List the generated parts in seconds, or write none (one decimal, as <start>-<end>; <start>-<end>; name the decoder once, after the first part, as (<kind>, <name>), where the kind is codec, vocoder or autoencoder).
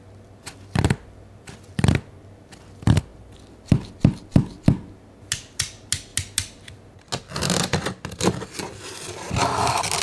none